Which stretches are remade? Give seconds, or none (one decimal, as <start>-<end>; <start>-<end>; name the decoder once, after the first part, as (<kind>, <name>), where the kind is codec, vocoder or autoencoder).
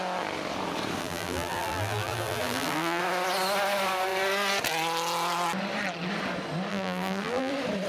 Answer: 1.0-3.0 (vocoder, BigVGAN v2); 6.7-7.5